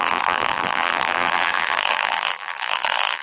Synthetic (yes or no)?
yes